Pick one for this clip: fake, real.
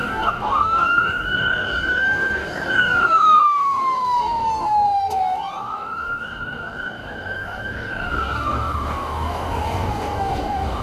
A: fake